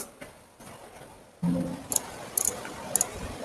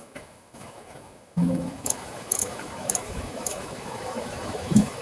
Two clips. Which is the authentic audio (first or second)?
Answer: first